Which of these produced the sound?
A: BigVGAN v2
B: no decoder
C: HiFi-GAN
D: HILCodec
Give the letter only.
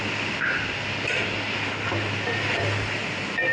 B